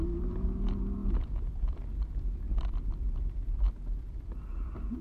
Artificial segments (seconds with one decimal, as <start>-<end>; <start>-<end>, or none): none